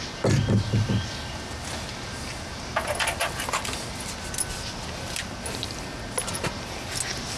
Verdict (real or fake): real